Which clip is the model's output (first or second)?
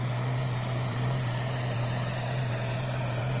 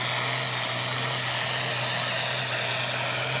first